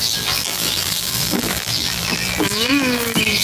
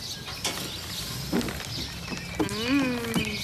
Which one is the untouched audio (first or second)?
second